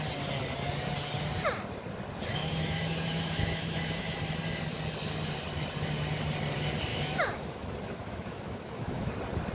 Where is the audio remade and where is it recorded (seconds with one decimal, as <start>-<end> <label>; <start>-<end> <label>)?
0.0-2.4 recorded; 2.4-4.2 remade; 4.2-6.9 recorded; 6.9-9.1 remade; 9.1-9.5 recorded